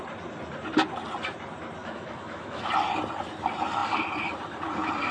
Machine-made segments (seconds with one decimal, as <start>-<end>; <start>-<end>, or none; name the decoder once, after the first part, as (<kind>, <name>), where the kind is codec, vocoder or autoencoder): 1.8-2.7 (autoencoder, DAC-VAE)